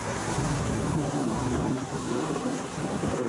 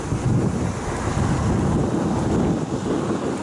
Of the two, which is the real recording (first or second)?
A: second